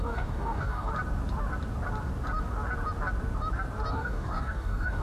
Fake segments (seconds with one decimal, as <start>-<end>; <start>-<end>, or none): 0.0-0.9; 3.9-5.0